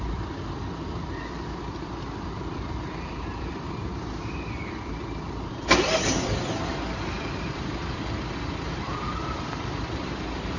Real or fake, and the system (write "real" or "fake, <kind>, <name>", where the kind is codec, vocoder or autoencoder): fake, vocoder, BigVGAN v2